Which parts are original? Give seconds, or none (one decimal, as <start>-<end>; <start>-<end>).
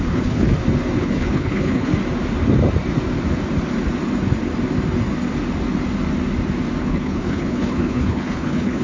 0.5-1.0; 1.9-6.8